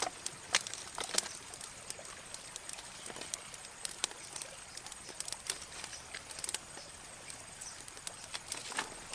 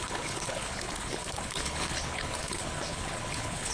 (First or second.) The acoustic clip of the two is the first